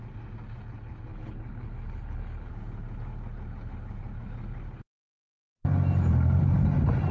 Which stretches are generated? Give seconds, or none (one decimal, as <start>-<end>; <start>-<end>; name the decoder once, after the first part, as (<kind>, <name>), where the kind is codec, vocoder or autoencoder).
1.1-2.5 (codec, HILCodec)